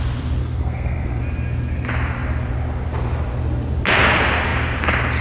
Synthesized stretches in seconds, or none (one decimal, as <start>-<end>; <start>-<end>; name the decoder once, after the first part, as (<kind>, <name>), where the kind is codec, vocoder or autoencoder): 0.4-1.2 (codec, SNAC)